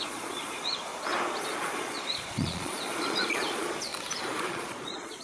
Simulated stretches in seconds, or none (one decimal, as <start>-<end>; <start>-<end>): 0.0-0.9; 1.4-3.9; 4.4-5.2